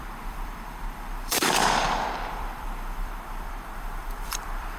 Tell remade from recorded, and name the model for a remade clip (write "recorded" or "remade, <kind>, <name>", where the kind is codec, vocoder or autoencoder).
remade, vocoder, BigVGAN v2